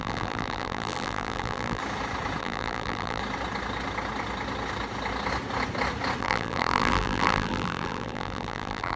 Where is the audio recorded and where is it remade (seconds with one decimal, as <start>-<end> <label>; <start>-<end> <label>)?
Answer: 0.0-1.8 remade; 1.8-2.4 recorded; 2.4-3.2 remade; 3.2-6.2 recorded; 6.2-9.0 remade